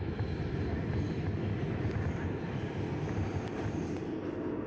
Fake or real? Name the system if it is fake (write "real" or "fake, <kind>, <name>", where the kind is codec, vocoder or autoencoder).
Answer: real